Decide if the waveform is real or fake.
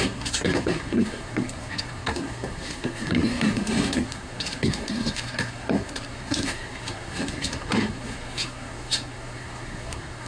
fake